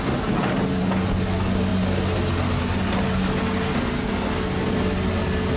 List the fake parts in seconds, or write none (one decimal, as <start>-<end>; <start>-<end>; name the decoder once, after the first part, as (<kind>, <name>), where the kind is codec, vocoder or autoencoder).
none